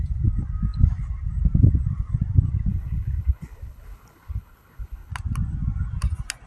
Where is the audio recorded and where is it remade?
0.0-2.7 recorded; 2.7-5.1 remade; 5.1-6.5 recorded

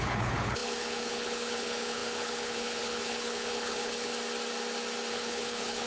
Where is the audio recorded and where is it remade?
0.0-4.1 remade; 4.1-5.1 recorded; 5.1-5.9 remade

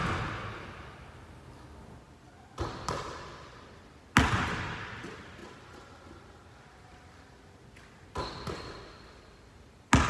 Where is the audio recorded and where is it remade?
0.0-10.1 recorded

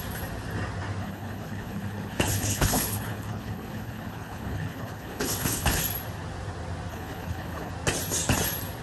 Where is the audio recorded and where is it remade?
0.0-1.0 recorded; 1.0-5.8 remade; 5.8-6.9 recorded; 6.9-7.7 remade; 7.7-8.8 recorded

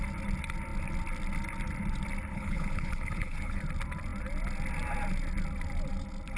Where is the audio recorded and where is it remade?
0.0-2.3 recorded; 2.3-3.6 remade; 3.6-6.4 recorded